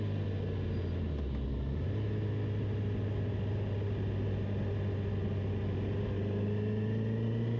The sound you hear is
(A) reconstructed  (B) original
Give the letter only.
B